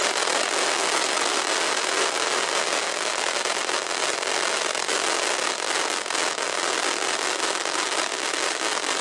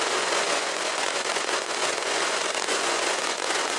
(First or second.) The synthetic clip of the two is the second